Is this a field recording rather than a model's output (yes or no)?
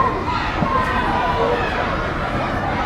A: yes